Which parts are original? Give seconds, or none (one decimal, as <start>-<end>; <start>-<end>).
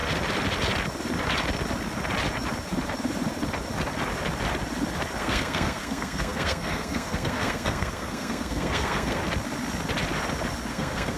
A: 0.0-5.2; 9.2-10.7